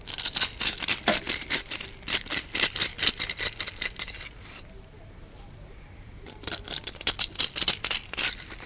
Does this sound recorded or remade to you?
remade